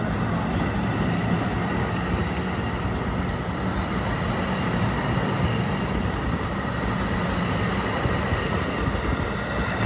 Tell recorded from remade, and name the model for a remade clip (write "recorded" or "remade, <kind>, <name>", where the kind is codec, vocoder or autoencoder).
recorded